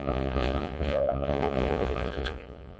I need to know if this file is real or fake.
fake